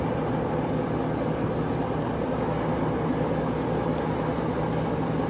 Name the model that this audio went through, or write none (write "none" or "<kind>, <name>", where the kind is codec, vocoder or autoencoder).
none